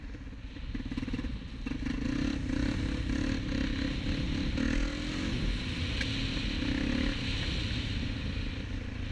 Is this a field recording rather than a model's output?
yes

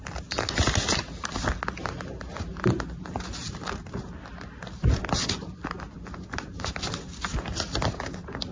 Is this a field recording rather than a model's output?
yes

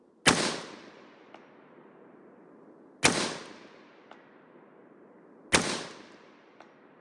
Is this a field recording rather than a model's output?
yes